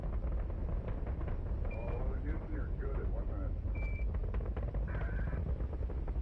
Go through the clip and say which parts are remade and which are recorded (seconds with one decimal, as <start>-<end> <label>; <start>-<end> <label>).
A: 0.0-0.6 recorded; 0.6-3.3 remade; 3.3-6.2 recorded

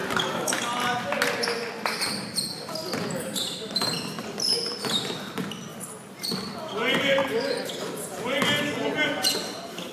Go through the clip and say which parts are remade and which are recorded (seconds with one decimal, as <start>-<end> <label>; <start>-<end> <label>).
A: 0.0-7.2 recorded; 7.2-7.7 remade; 7.7-9.9 recorded

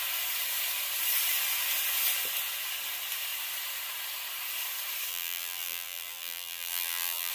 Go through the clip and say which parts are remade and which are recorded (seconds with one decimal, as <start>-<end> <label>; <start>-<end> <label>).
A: 0.0-5.1 recorded; 5.1-7.3 remade

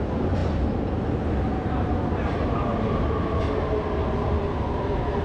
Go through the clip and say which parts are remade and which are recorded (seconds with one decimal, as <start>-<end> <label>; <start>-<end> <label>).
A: 0.0-5.2 recorded

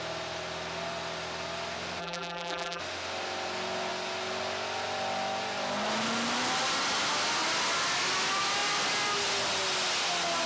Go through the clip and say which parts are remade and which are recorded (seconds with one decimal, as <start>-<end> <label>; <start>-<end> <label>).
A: 0.0-2.0 recorded; 2.0-2.8 remade; 2.8-10.5 recorded

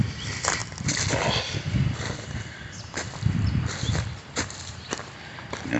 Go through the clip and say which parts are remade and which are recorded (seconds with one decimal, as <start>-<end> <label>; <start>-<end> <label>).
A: 0.0-0.6 remade; 0.6-1.1 recorded; 1.1-5.8 remade